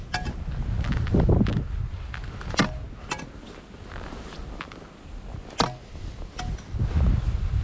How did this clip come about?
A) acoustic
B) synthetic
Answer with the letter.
A